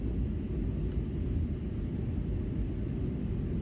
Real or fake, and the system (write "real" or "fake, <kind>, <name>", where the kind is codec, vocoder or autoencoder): real